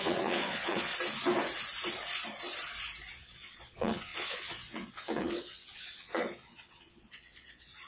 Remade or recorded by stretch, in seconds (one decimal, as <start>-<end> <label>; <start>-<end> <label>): 0.0-0.9 remade; 0.9-3.1 recorded; 3.1-7.9 remade